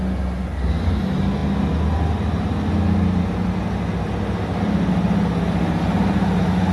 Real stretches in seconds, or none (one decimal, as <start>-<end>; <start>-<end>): 0.0-6.7